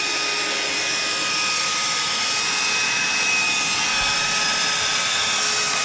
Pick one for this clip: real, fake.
real